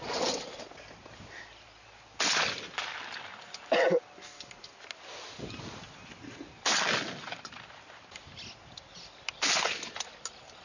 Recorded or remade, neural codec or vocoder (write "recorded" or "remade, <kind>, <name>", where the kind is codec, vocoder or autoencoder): recorded